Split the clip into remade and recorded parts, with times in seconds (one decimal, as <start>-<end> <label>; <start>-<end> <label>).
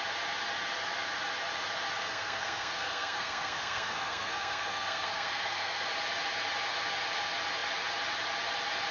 0.0-2.0 recorded; 2.0-5.9 remade; 5.9-8.9 recorded